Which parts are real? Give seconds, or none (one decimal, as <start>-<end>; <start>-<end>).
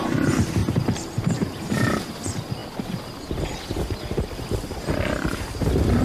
0.0-0.6; 1.9-6.0